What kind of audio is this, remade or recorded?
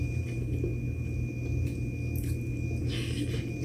recorded